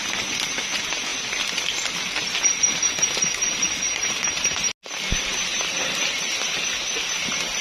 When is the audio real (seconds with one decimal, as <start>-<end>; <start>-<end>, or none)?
0.0-3.9; 4.6-7.6